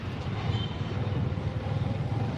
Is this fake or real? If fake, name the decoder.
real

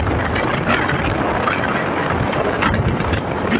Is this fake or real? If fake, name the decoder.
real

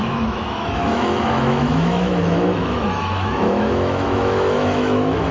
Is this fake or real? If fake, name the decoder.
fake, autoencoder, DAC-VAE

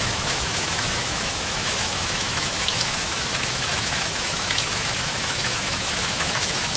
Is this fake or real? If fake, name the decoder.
fake, autoencoder, DAC-VAE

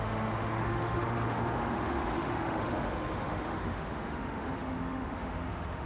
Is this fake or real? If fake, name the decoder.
fake, autoencoder, DAC-VAE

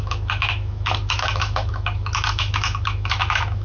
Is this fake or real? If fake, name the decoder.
fake, autoencoder, DAC-VAE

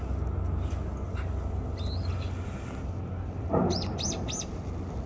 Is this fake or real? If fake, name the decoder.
real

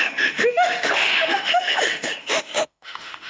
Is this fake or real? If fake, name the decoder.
fake, autoencoder, DAC-VAE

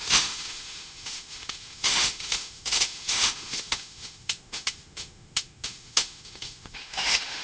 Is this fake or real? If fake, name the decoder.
fake, autoencoder, DAC-VAE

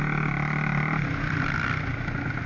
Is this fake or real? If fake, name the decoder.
real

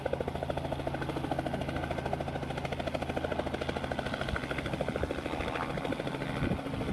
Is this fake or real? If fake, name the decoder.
real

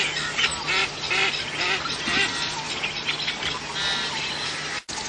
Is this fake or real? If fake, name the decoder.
real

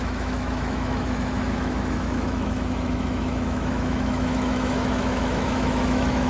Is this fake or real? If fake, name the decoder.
fake, autoencoder, DAC-VAE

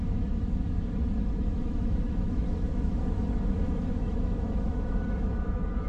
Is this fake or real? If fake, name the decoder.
fake, autoencoder, DAC-VAE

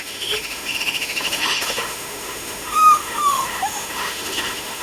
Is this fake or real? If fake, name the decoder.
fake, autoencoder, DAC-VAE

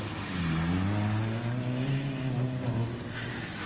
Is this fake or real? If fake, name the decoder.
real